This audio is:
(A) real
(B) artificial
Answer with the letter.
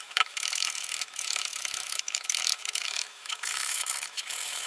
B